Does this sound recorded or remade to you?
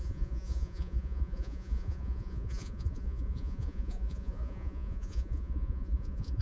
remade